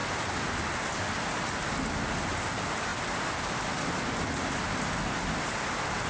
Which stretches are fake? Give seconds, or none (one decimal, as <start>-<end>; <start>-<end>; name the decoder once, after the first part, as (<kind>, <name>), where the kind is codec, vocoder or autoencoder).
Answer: none